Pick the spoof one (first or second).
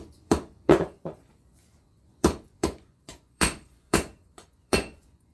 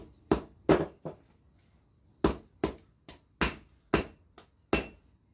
first